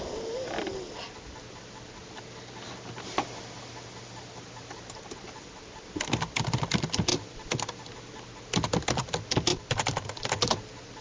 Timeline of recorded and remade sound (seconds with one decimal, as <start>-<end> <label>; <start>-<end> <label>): 0.0-2.0 recorded; 2.0-4.8 remade; 4.8-7.1 recorded; 7.1-7.9 remade; 7.9-9.5 recorded; 9.5-10.3 remade; 10.3-11.0 recorded